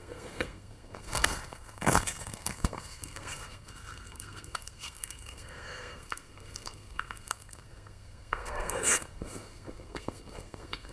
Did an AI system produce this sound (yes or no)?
yes